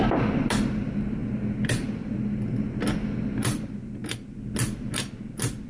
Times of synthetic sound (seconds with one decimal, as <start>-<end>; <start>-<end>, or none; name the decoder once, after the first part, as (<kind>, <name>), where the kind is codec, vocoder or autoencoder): none